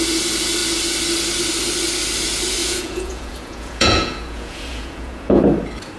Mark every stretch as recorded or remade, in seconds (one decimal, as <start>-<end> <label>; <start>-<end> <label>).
0.0-2.6 recorded; 2.6-5.4 remade; 5.4-6.0 recorded

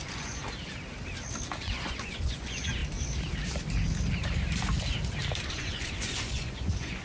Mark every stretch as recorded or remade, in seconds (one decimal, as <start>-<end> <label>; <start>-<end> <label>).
0.0-0.4 remade; 0.4-1.7 recorded; 1.7-2.8 remade; 2.8-5.5 recorded; 5.5-7.0 remade

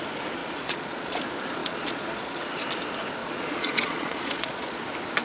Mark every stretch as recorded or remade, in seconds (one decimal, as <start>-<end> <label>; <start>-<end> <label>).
0.0-0.4 recorded; 0.4-1.2 remade; 1.2-1.6 recorded; 1.6-2.5 remade; 2.5-3.2 recorded; 3.2-4.8 remade; 4.8-5.2 recorded

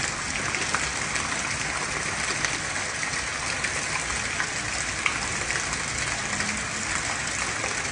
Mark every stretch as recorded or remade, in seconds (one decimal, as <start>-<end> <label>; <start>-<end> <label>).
0.0-7.9 recorded